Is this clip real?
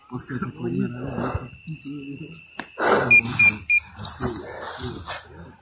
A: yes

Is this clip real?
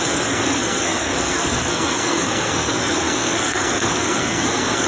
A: no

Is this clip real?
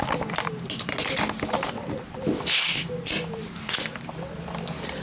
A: yes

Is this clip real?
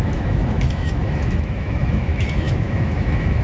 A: no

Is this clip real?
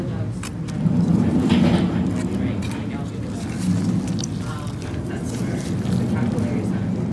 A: yes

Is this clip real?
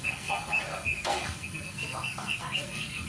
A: no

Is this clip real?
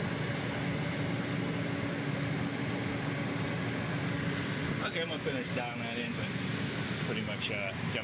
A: yes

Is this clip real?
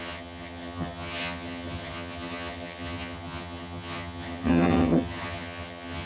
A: no